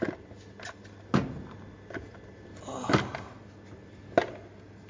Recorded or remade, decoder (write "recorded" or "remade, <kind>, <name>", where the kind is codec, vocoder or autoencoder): recorded